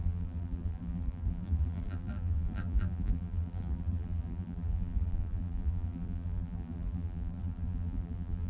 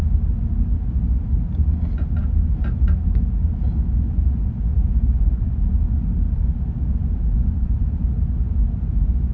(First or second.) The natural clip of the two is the second